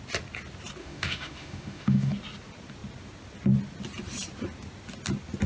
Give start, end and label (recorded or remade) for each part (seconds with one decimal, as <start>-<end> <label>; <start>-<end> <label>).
0.0-0.8 recorded; 0.8-2.1 remade; 2.1-5.5 recorded